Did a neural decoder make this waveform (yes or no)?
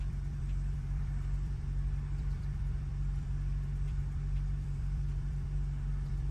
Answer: yes